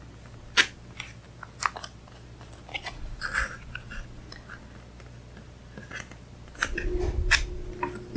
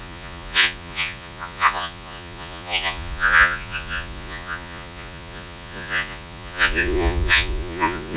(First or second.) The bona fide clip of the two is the first